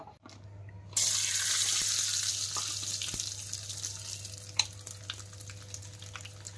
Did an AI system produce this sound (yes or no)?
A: no